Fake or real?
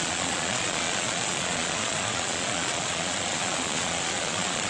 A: fake